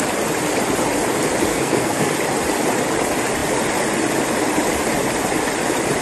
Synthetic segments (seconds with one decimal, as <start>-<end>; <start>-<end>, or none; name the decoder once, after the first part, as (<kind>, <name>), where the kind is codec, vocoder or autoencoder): 1.5-2.1 (codec, SNAC)